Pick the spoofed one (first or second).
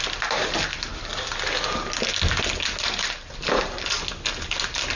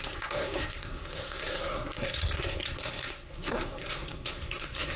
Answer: second